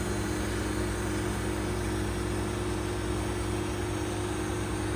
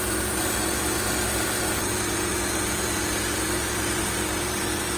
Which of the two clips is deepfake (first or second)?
second